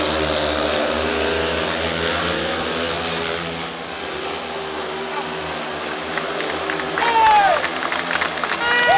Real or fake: real